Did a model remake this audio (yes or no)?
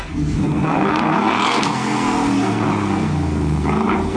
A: yes